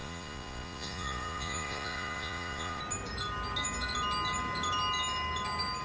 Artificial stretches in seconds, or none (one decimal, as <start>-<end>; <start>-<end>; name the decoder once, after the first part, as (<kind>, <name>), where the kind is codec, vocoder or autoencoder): 0.0-2.8 (vocoder, Vocos)